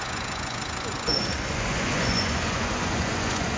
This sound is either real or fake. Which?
fake